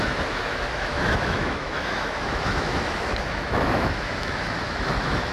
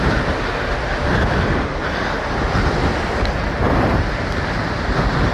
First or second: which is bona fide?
second